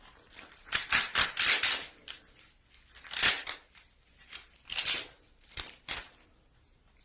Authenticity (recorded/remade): recorded